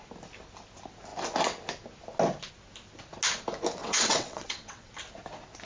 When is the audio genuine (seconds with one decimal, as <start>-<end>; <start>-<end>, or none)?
0.0-3.8; 4.9-5.7